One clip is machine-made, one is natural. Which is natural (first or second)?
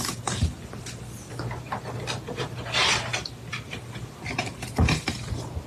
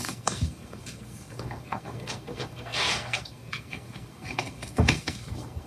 first